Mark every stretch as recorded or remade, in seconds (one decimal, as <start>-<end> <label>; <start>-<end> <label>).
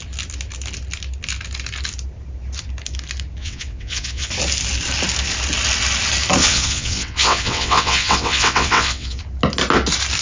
0.0-3.4 recorded; 3.4-4.3 remade; 4.3-6.4 recorded; 6.4-9.2 remade; 9.2-10.2 recorded